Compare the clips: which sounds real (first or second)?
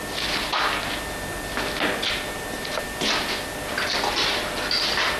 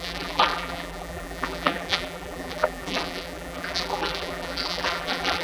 first